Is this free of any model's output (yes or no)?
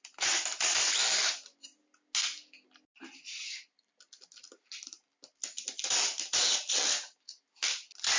yes